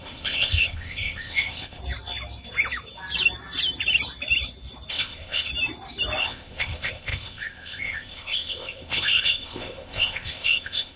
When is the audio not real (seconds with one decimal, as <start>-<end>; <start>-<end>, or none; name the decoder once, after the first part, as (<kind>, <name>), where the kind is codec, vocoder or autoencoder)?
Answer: 0.0-1.8 (codec, ZipCodec); 4.9-5.5; 6.2-11.0